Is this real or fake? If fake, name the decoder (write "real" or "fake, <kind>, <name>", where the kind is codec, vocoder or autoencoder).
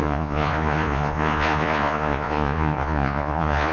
fake, vocoder, Vocos